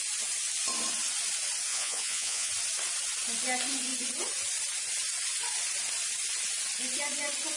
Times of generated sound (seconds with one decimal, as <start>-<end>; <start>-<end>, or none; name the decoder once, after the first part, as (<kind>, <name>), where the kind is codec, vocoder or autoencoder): 1.7-2.5 (vocoder, Vocos)